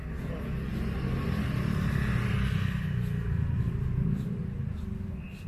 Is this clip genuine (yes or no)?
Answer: yes